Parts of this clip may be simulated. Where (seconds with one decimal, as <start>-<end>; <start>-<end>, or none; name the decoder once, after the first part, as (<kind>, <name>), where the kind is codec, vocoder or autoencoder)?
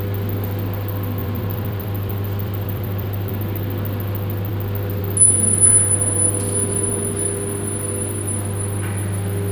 1.2-3.3 (vocoder, BigVGAN v2)